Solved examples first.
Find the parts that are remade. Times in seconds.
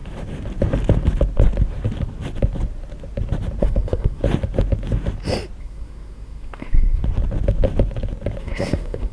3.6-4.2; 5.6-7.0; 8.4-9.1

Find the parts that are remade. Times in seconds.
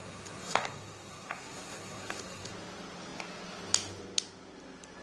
0.0-2.5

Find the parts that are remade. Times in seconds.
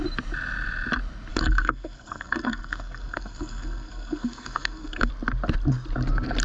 1.3-5.1